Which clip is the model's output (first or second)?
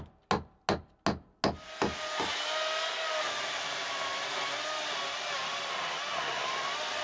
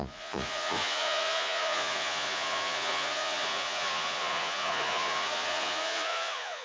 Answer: second